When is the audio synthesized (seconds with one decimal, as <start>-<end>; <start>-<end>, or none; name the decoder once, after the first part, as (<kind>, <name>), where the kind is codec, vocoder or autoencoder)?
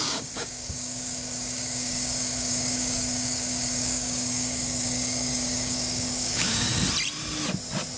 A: 0.0-6.7 (codec, DAC)